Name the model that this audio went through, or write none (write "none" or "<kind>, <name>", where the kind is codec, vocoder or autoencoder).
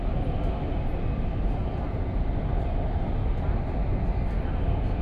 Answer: none